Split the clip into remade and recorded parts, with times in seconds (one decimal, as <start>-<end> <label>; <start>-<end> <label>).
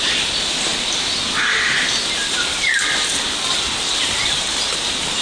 0.0-5.2 remade